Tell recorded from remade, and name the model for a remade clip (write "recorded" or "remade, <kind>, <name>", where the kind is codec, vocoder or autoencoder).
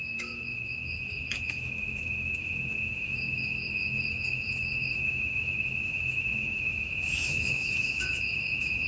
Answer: remade, autoencoder, DAC-VAE